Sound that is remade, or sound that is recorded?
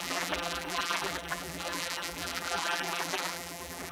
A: remade